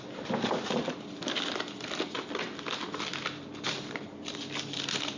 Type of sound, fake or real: real